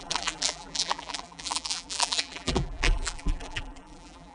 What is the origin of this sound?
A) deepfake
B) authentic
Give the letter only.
A